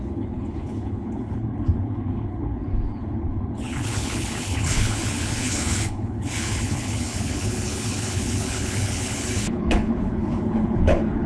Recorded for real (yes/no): no